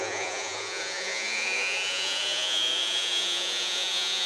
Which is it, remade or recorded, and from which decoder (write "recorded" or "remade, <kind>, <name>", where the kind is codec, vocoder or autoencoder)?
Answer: remade, vocoder, Vocos